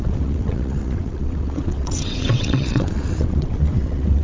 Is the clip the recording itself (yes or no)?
no